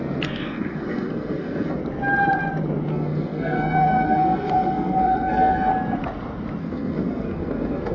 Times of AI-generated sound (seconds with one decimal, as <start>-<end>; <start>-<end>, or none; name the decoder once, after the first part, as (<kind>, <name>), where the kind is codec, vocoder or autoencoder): 0.0-1.8 (codec, SNAC); 2.9-5.7; 6.6-7.9